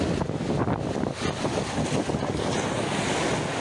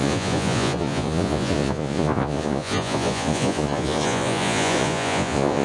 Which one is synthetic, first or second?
second